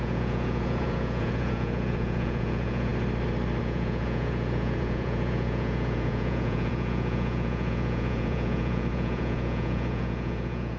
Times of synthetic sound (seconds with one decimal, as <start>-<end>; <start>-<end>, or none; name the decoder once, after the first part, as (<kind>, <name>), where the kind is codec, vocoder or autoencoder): 0.0-2.9 (vocoder, Vocos); 3.6-10.8